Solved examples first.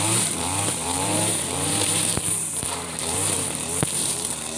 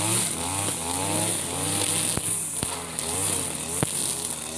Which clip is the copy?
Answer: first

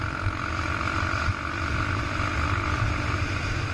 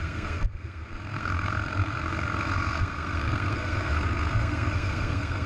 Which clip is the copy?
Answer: second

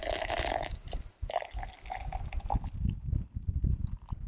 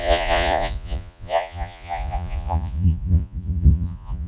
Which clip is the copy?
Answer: second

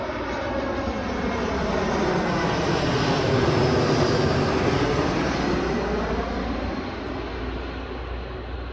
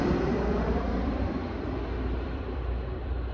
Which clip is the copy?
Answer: second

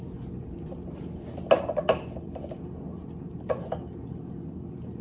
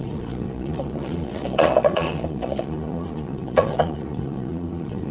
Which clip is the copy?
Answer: second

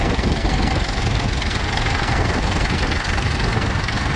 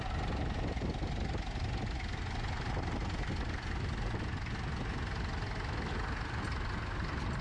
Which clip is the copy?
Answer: first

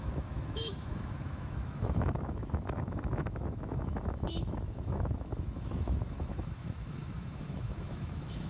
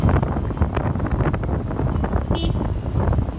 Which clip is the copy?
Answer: first